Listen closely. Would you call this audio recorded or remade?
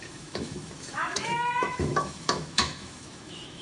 remade